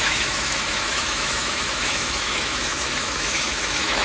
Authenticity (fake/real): fake